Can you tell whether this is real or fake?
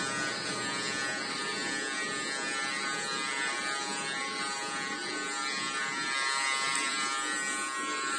real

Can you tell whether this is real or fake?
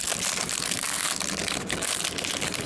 real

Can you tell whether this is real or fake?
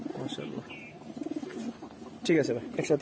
real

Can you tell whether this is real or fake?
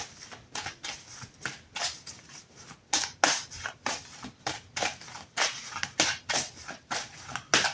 real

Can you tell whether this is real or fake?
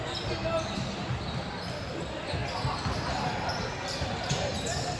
real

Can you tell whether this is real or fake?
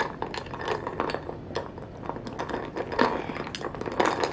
real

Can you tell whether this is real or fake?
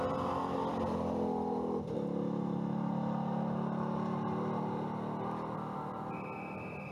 real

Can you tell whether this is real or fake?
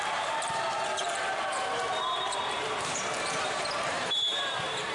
fake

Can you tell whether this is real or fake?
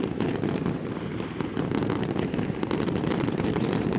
fake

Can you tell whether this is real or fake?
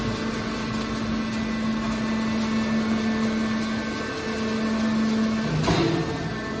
real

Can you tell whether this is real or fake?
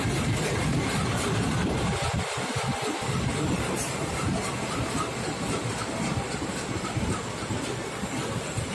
fake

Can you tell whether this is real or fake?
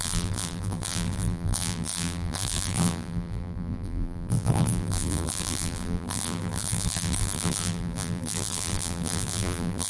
fake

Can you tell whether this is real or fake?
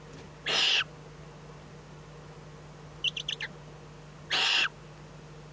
real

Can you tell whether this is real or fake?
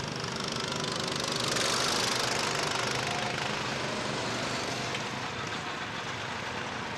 real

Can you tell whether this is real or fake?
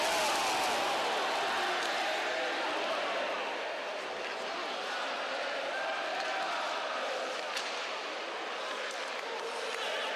real